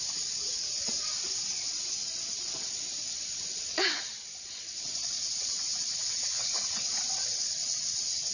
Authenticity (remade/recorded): remade